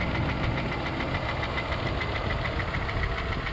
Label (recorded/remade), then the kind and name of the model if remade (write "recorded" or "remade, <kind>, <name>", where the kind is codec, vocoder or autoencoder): recorded